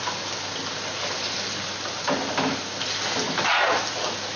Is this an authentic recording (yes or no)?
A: yes